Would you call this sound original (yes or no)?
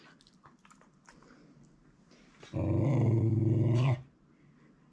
yes